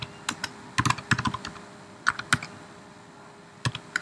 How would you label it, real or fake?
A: real